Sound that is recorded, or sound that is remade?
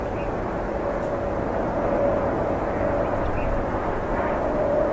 remade